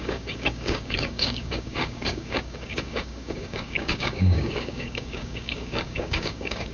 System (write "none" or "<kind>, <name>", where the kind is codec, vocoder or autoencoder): codec, DAC